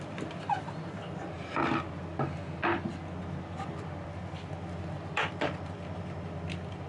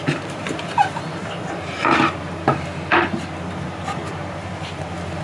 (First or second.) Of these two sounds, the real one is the first